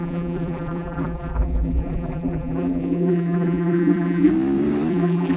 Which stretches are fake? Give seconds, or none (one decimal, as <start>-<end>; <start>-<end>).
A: 0.0-4.3; 4.9-5.4